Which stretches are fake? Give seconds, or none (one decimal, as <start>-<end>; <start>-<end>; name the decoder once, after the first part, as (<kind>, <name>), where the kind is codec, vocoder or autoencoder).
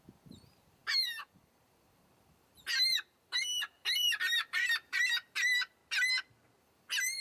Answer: 0.0-5.8 (vocoder, BigVGAN v2); 6.6-7.2